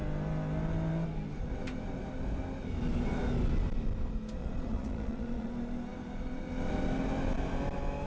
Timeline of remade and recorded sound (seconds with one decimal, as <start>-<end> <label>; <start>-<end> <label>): 0.0-4.4 recorded; 4.4-5.5 remade; 5.5-8.1 recorded